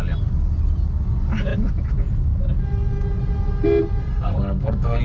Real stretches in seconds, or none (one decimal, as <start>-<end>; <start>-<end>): 0.0-4.0